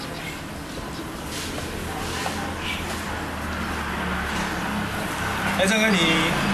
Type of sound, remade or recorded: recorded